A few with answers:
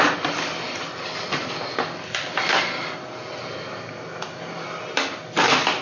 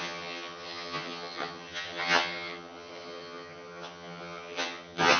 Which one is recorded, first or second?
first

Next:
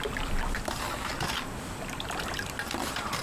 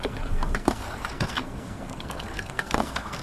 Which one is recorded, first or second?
first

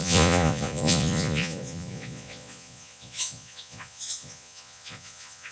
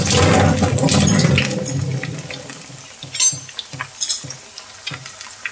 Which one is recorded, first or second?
second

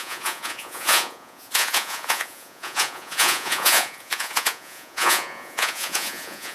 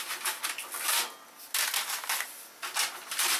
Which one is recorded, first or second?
second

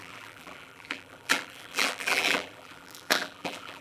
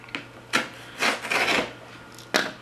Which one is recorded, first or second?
second